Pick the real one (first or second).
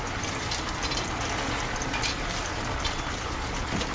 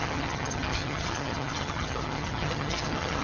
first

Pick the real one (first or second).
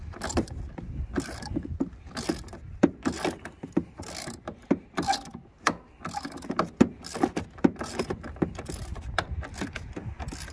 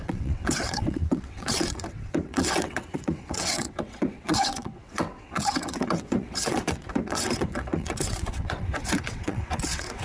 first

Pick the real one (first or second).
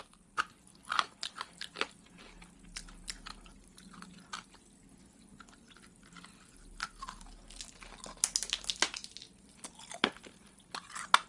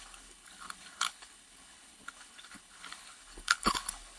first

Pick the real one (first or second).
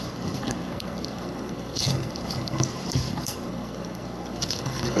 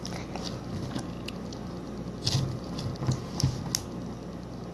second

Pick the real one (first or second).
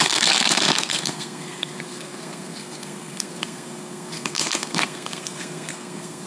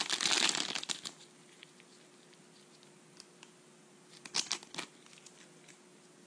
second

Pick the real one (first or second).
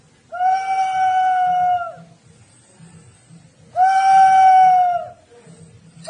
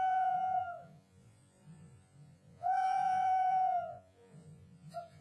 first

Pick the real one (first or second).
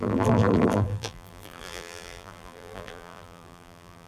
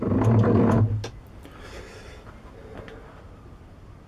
second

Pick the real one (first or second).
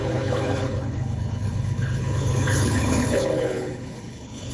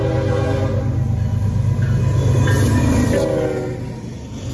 second